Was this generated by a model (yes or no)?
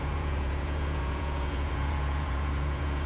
yes